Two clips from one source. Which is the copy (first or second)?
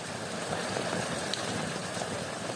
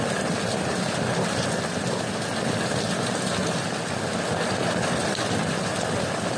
first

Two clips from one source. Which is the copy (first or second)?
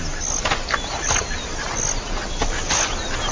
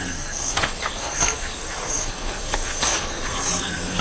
second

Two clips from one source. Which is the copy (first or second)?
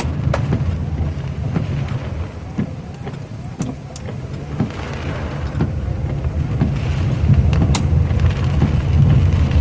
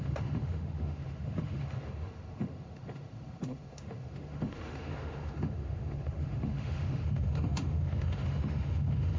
second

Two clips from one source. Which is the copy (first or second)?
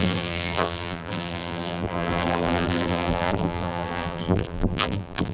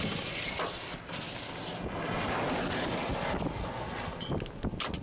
first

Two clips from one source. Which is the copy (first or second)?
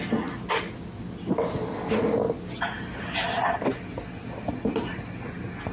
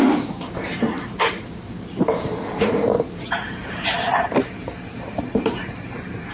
second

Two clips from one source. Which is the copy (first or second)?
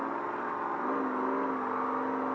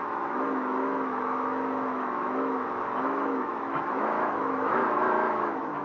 second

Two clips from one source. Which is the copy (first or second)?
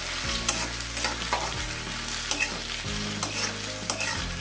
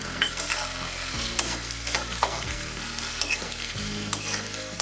second